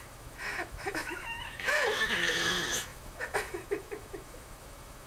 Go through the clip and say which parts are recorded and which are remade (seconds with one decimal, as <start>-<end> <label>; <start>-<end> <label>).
0.0-5.1 remade